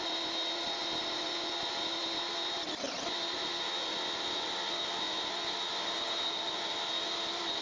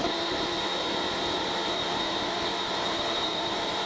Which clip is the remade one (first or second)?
second